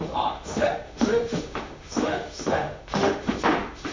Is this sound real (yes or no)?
no